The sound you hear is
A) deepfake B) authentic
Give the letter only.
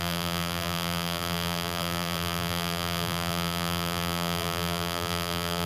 A